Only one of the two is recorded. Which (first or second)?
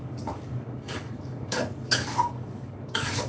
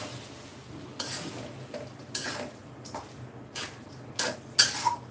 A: second